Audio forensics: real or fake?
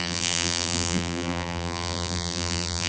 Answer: fake